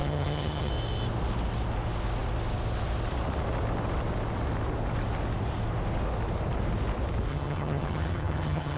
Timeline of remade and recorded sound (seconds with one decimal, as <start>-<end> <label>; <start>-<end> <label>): 0.0-0.7 remade; 0.7-7.3 recorded; 7.3-8.8 remade